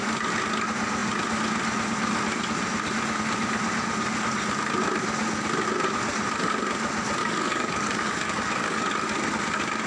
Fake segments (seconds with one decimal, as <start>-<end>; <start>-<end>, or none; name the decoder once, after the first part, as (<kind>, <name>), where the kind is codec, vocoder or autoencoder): 7.2-8.9 (codec, DAC)

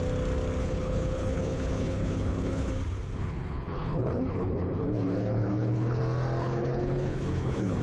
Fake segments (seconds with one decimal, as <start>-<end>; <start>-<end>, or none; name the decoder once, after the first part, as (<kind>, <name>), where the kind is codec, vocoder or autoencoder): 0.6-2.7 (codec, HILCodec); 3.2-6.0; 6.4-7.8

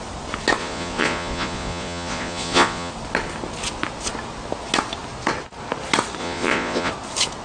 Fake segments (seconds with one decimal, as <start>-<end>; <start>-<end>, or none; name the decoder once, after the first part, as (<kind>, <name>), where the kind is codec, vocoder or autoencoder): 0.6-2.9 (vocoder, Vocos); 6.2-6.9

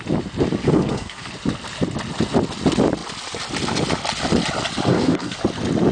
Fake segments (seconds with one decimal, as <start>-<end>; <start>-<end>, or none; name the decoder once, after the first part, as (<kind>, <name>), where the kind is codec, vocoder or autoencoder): 0.6-1.3 (codec, SNAC); 4.9-5.4